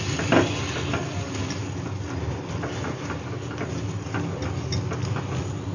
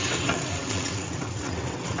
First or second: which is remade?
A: second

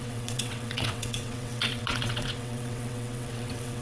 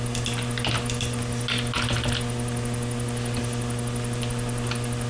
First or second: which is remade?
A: first